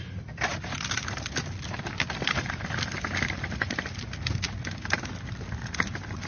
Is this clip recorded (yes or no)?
yes